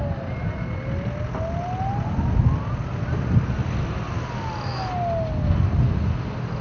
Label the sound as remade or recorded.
recorded